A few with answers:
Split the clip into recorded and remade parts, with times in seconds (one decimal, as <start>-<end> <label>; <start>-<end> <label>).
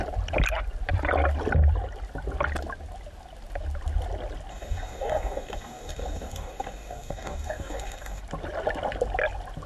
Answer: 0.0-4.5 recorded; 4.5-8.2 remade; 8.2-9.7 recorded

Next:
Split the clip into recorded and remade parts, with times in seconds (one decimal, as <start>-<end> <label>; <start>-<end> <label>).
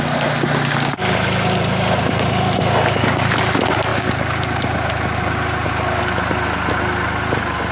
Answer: 0.0-7.7 recorded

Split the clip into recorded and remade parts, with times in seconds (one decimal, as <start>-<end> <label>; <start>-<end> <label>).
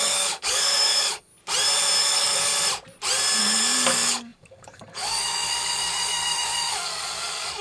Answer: 0.0-1.3 remade; 1.3-2.0 recorded; 2.0-2.5 remade; 2.5-3.4 recorded; 3.4-7.6 remade